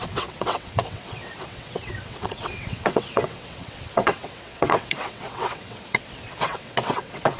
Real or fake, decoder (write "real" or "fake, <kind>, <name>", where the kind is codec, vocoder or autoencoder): fake, vocoder, WaveNeXt